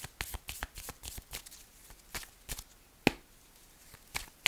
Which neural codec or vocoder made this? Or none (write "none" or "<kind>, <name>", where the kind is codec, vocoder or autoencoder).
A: none